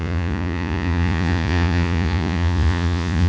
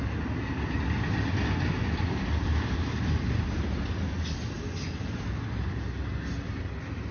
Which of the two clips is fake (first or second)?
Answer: first